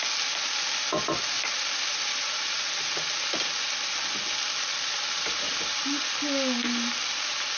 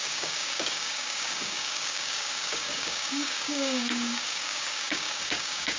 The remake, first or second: second